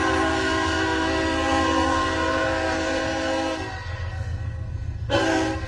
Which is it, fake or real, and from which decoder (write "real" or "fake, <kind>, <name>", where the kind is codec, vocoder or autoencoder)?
fake, codec, SNAC